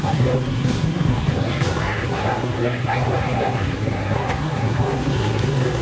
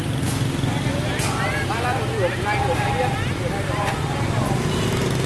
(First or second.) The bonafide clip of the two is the second